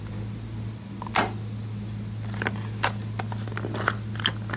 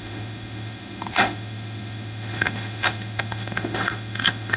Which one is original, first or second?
first